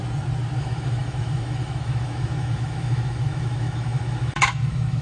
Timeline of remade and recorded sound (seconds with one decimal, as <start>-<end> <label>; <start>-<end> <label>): 0.0-0.6 recorded; 0.6-5.0 remade